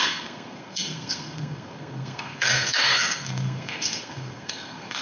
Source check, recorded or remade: remade